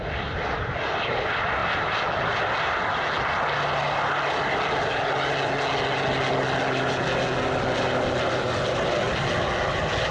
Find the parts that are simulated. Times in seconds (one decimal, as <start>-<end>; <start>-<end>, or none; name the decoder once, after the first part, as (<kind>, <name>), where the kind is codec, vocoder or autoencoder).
none